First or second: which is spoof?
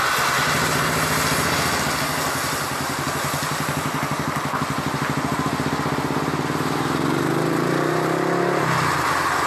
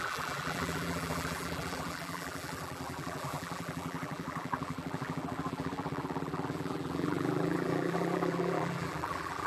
second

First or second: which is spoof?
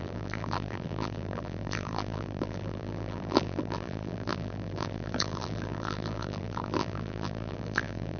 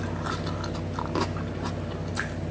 first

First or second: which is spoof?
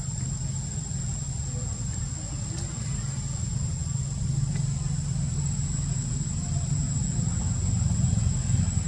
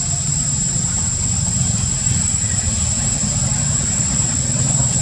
second